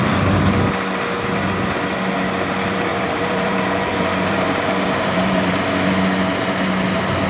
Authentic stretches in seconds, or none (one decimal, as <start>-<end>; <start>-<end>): 0.0-2.9; 5.5-7.3